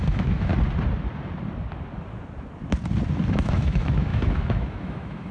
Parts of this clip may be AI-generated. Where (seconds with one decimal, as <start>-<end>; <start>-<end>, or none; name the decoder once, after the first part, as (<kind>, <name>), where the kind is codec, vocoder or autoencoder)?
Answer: 0.0-0.5 (autoencoder, DAC-VAE); 3.3-5.3

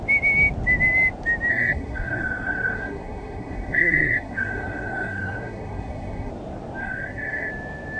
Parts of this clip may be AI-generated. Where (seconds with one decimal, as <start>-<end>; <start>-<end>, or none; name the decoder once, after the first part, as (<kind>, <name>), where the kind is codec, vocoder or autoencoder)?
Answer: 1.5-6.3 (codec, SNAC); 6.8-7.5

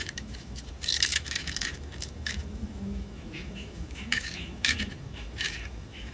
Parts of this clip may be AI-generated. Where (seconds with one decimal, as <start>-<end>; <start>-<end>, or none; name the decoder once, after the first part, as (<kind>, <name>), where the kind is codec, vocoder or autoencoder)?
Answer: 0.0-6.1 (autoencoder, DAC-VAE)

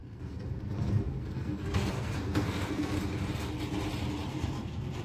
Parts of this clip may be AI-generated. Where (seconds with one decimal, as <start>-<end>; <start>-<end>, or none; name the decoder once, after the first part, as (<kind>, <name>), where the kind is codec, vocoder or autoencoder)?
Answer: 0.0-3.0 (codec, SNAC); 4.3-5.0